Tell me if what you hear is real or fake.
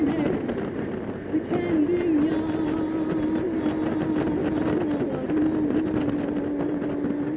real